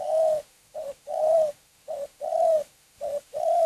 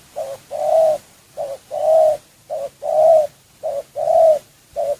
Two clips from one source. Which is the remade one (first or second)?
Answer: first